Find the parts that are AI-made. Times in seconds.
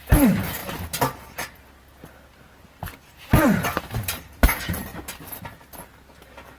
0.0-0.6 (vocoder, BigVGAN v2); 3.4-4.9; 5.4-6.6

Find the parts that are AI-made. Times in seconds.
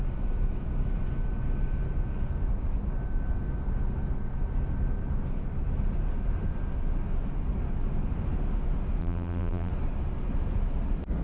9.0-9.7 (vocoder, BigVGAN v2)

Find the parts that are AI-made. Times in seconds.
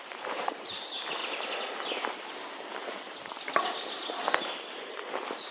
0.0-1.2 (vocoder, BigVGAN v2); 4.4-5.5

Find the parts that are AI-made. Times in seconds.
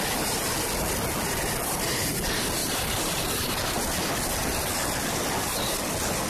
2.6-3.5 (vocoder, BigVGAN v2)